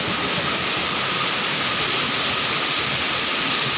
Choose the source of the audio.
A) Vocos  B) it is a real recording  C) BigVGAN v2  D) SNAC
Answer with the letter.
B